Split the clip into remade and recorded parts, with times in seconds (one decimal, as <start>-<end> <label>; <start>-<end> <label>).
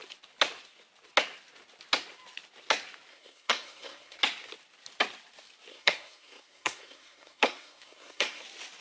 0.0-3.1 recorded; 3.1-4.2 remade; 4.2-5.7 recorded; 5.7-8.4 remade; 8.4-8.8 recorded